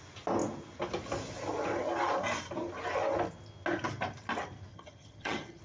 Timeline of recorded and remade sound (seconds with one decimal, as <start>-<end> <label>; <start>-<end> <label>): 0.0-4.7 recorded; 4.7-5.6 remade